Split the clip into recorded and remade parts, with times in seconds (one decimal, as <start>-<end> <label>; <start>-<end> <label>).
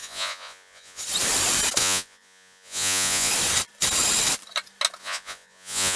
0.0-1.0 remade; 1.0-1.8 recorded; 1.8-3.3 remade; 3.3-5.0 recorded; 5.0-6.0 remade